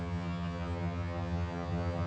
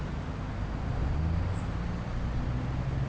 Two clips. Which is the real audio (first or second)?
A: second